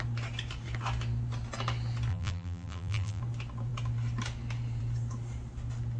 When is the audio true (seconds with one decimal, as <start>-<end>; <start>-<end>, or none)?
0.0-2.1; 3.2-6.0